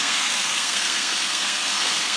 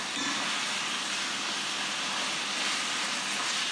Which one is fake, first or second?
first